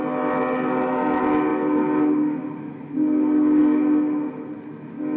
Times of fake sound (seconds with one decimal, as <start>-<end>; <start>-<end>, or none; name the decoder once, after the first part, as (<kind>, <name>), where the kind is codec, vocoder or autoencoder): none